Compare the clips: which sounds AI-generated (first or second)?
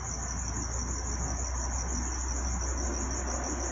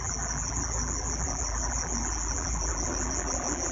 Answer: second